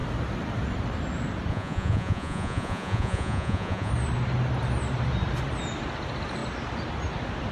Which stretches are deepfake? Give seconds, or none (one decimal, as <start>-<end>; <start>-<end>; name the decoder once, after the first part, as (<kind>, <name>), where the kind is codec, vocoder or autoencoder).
1.5-3.9 (vocoder, Vocos)